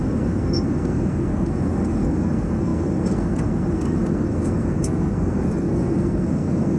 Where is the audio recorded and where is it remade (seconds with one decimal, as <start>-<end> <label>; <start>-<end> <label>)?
0.0-6.8 remade